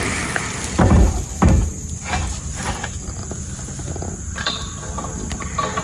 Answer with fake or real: real